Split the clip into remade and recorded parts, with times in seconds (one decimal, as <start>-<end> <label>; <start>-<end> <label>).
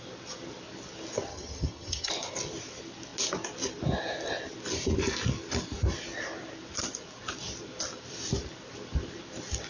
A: 0.0-1.3 recorded; 1.3-2.1 remade; 2.1-9.7 recorded